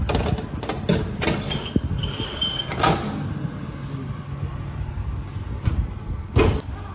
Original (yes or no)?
yes